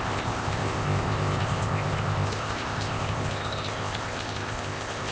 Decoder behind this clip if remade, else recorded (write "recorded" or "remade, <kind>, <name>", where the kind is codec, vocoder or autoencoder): remade, codec, ZipCodec